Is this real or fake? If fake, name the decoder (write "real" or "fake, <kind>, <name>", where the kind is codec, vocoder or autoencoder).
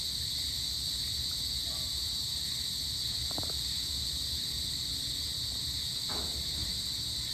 real